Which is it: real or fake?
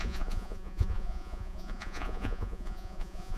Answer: fake